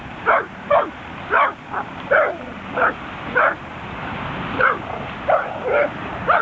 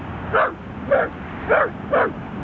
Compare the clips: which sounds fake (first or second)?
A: first